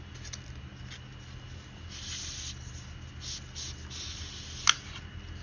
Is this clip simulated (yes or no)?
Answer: no